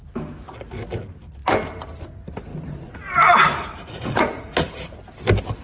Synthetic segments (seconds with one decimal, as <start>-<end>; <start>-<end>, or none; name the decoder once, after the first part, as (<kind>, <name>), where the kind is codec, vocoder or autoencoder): 2.5-5.0 (vocoder, Vocos)